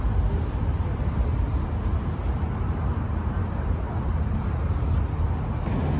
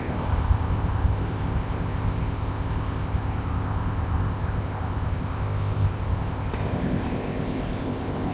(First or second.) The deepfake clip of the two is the second